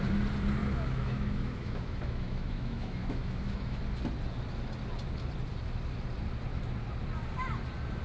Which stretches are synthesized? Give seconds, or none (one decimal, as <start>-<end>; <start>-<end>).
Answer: 0.6-3.8